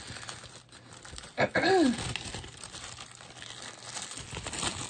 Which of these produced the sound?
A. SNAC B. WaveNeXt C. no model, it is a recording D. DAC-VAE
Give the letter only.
C